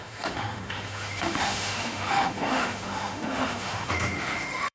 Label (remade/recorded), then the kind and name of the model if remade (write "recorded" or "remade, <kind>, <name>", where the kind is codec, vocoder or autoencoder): remade, autoencoder, DAC-VAE